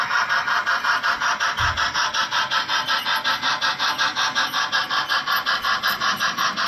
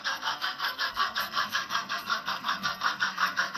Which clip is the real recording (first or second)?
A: first